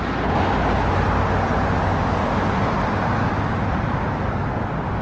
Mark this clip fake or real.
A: real